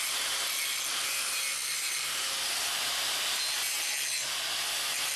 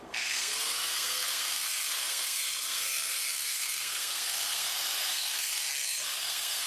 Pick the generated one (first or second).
second